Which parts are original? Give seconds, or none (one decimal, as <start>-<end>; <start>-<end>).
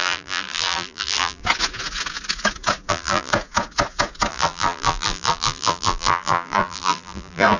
1.4-2.9; 3.3-4.3